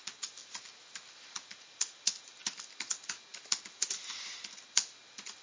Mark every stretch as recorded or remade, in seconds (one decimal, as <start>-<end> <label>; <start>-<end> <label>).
0.0-5.4 recorded